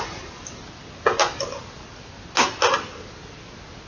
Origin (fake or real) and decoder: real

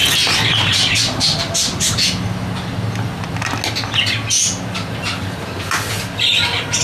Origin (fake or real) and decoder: real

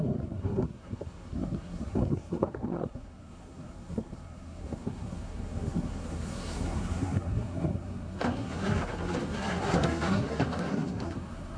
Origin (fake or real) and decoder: fake, codec, SNAC